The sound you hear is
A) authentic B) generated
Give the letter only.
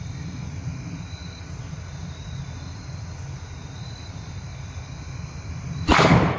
A